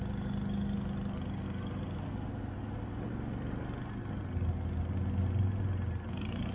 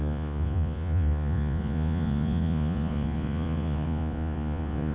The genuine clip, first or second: first